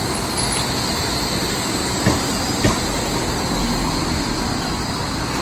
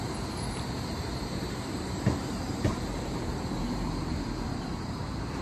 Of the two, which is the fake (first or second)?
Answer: second